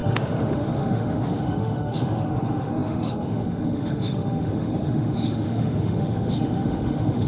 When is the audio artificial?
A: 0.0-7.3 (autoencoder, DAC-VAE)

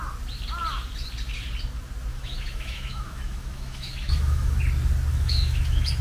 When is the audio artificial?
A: 2.1-4.6 (autoencoder, DAC-VAE); 5.1-6.0

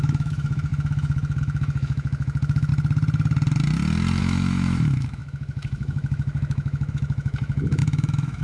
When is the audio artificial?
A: 0.0-2.7 (autoencoder, DAC-VAE); 4.2-8.4

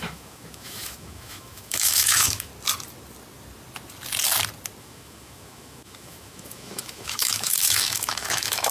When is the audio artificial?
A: 0.0-2.5 (autoencoder, DAC-VAE); 4.8-8.7

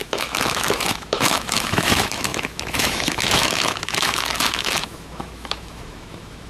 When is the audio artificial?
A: 0.0-6.5 (autoencoder, DAC-VAE)

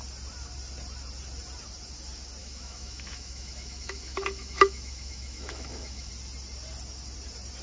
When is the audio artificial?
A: 2.4-6.1 (autoencoder, DAC-VAE)